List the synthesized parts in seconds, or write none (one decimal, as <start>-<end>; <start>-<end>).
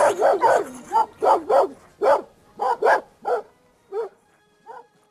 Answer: 0.0-1.9; 3.0-5.1